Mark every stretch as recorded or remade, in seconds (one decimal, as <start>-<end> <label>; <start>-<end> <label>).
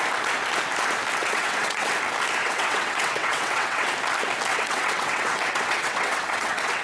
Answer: 0.0-1.2 recorded; 1.2-1.9 remade; 1.9-2.4 recorded; 2.4-3.9 remade; 3.9-4.5 recorded; 4.5-6.8 remade